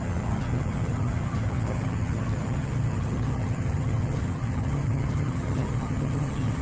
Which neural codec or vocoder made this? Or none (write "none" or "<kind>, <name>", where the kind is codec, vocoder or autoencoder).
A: vocoder, HiFi-GAN